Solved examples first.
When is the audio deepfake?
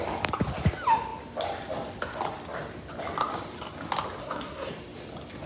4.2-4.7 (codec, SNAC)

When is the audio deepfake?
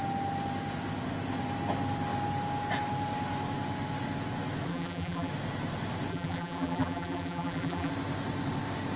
4.7-5.3 (vocoder, BigVGAN v2); 6.1-7.9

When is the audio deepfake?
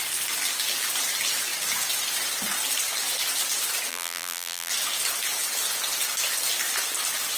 3.9-4.7 (vocoder, BigVGAN v2)